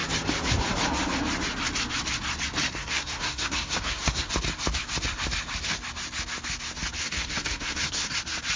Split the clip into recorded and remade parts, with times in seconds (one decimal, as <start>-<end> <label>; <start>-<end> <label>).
0.0-2.8 recorded; 2.8-4.3 remade; 4.3-7.0 recorded; 7.0-8.2 remade; 8.2-8.6 recorded